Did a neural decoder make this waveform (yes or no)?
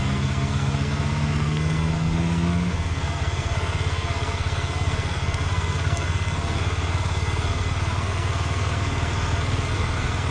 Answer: yes